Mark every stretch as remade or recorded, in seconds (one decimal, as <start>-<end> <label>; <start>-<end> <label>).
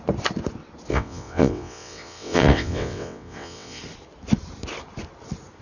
0.0-0.9 recorded; 0.9-3.8 remade; 3.8-5.6 recorded